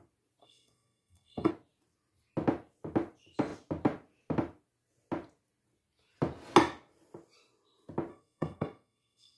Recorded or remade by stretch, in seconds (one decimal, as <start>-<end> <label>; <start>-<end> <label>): 0.0-0.4 recorded; 0.4-1.5 remade; 1.5-8.1 recorded; 8.1-9.4 remade